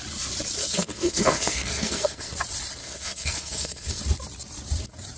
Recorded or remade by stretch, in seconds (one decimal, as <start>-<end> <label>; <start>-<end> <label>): 0.0-0.6 recorded; 0.6-2.3 remade; 2.3-2.8 recorded; 2.8-4.0 remade; 4.0-5.2 recorded